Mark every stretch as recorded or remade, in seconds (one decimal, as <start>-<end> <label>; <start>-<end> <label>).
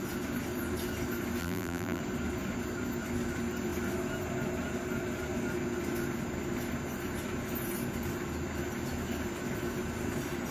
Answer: 0.0-1.4 recorded; 1.4-2.0 remade; 2.0-10.5 recorded